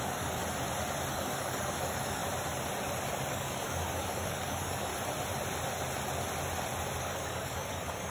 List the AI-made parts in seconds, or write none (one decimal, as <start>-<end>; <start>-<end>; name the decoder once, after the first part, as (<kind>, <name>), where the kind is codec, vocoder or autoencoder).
0.0-0.4 (codec, DAC); 1.1-2.2; 3.3-4.9; 7.0-8.1

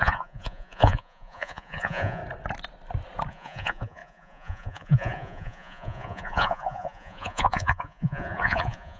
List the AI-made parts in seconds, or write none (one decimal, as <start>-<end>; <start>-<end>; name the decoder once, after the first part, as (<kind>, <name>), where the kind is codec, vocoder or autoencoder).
0.0-2.2 (vocoder, Vocos); 3.3-9.0